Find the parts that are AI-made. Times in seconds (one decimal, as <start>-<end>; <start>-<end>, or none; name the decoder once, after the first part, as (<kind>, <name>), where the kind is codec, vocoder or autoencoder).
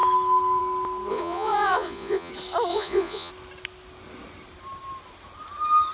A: 1.1-2.3 (vocoder, Vocos); 2.7-3.3